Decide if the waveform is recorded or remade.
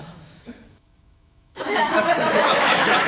remade